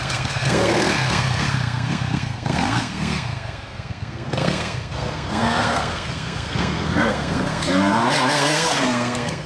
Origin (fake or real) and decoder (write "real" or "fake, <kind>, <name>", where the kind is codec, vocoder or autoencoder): fake, codec, SNAC